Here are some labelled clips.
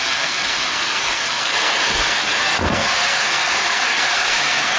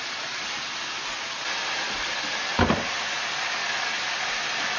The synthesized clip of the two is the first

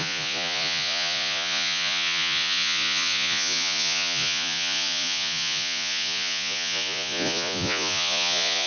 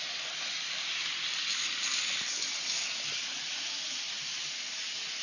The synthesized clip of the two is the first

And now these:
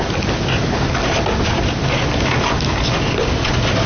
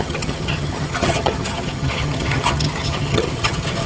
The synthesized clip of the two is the second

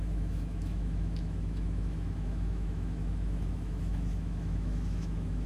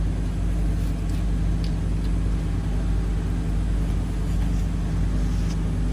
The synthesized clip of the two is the first